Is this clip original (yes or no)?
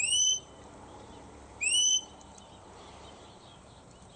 no